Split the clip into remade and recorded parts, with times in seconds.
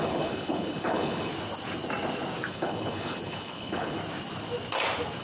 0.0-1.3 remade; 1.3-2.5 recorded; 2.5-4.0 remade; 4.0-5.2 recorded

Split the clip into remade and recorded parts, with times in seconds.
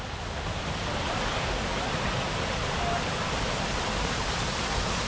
0.0-5.1 recorded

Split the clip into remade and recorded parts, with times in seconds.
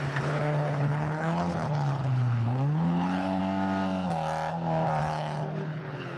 0.0-3.4 remade; 3.4-5.0 recorded; 5.0-6.2 remade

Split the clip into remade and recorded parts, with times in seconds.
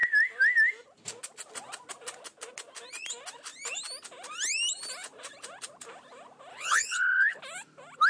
0.0-6.5 recorded; 6.5-7.4 remade; 7.4-8.1 recorded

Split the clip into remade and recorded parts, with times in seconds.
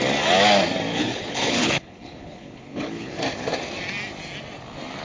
0.0-0.9 recorded; 0.9-3.1 remade; 3.1-5.0 recorded